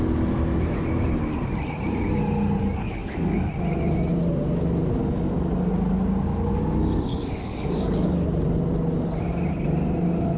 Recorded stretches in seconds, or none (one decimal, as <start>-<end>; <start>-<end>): 0.0-2.6; 3.5-5.0; 5.5-7.1; 8.1-10.4